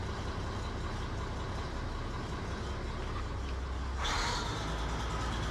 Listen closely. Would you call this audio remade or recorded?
recorded